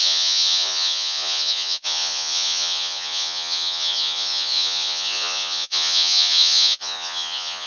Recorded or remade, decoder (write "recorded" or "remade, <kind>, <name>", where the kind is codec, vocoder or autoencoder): remade, vocoder, Vocos